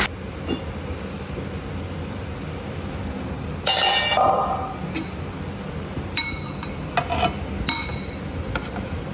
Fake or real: real